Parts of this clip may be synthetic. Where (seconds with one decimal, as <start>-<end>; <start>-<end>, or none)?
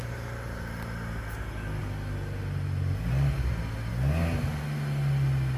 none